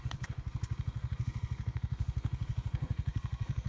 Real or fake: fake